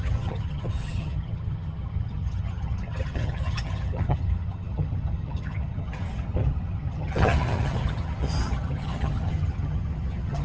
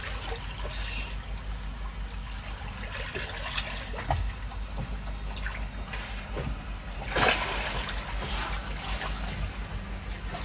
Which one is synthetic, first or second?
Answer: first